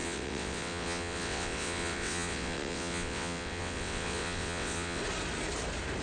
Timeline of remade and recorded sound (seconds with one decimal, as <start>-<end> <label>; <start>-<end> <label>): 0.0-5.0 remade; 5.0-6.0 recorded